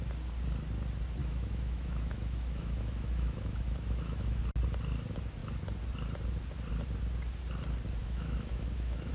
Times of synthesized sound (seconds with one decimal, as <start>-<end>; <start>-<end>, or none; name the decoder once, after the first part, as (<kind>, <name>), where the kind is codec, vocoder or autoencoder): 1.2-4.4 (autoencoder, DAC-VAE); 8.0-9.1